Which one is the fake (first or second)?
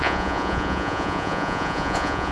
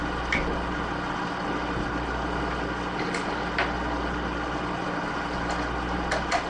first